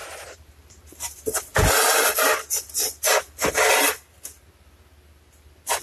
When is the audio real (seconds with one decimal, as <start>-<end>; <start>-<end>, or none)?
3.5-5.8